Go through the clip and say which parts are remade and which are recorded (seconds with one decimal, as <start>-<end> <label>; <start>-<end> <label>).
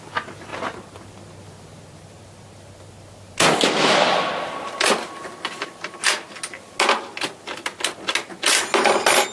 0.0-9.3 recorded